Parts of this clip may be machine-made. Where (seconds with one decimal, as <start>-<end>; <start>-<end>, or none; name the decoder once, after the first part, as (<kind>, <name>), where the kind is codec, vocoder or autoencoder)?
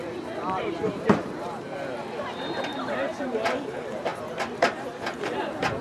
0.0-5.8 (vocoder, BigVGAN v2)